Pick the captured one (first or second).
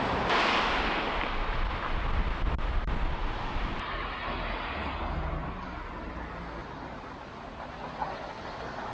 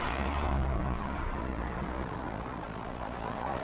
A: first